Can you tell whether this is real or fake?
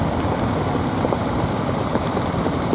real